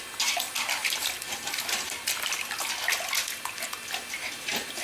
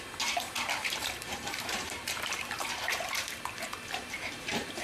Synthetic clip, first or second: second